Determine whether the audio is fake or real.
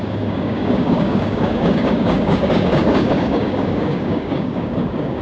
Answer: fake